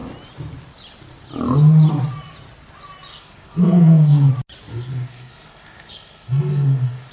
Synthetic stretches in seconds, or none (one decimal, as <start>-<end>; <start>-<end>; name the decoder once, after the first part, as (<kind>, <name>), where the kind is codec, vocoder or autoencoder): 3.1-4.3 (codec, SNAC); 4.7-7.1